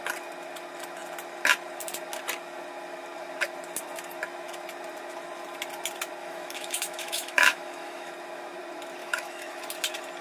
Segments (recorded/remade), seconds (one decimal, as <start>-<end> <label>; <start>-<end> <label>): 0.0-6.2 recorded; 6.2-8.1 remade; 8.1-9.0 recorded; 9.0-9.6 remade; 9.6-10.2 recorded